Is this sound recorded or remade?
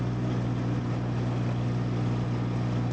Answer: recorded